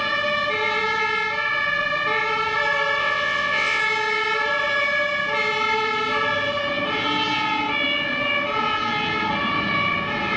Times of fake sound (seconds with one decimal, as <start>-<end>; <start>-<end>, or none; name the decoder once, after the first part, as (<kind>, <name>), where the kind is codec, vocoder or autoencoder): 3.0-3.8 (vocoder, WaveNeXt)

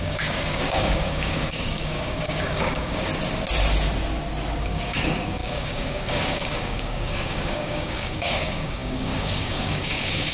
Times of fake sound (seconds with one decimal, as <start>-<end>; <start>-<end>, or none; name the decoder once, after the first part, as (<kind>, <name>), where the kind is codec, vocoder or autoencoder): 0.0-3.1 (codec, DAC); 4.6-10.3